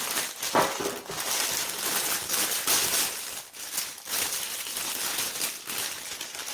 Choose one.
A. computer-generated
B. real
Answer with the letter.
B